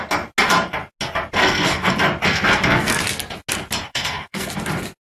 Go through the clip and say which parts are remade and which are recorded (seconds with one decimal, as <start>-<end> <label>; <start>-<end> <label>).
0.0-1.4 recorded; 1.4-1.9 remade; 1.9-2.3 recorded; 2.3-3.0 remade; 3.0-3.9 recorded; 3.9-4.5 remade; 4.5-5.0 recorded